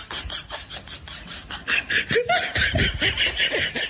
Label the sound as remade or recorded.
recorded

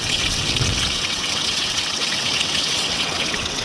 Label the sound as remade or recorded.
remade